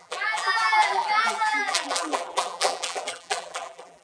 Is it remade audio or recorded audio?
remade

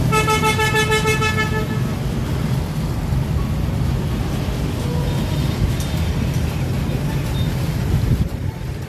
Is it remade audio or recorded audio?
recorded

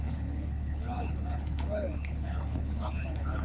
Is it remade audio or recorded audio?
remade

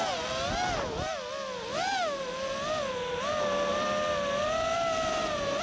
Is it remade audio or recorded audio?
recorded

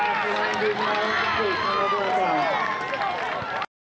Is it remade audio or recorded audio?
recorded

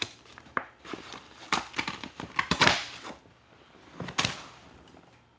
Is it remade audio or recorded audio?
remade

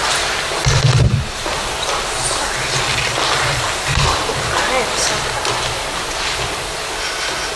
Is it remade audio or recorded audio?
recorded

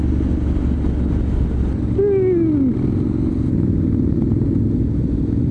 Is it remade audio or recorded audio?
recorded